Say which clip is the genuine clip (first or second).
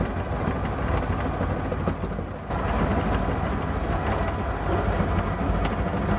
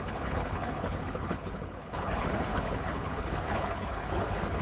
first